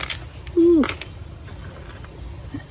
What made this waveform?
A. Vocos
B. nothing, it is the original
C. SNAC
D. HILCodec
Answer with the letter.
B